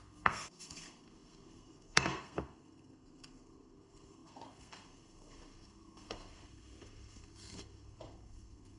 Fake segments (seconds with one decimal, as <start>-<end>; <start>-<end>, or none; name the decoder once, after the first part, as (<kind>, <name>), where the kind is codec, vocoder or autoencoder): 0.0-8.8 (codec, SNAC)